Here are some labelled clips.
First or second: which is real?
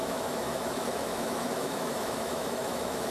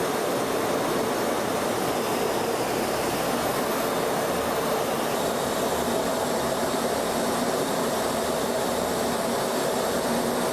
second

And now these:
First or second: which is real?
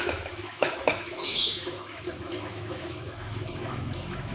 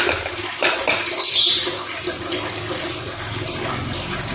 second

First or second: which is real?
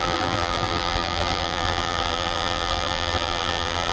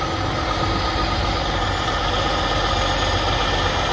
second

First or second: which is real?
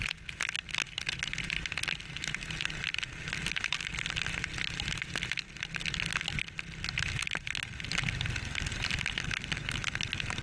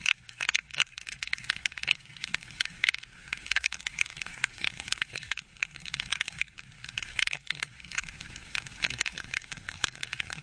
first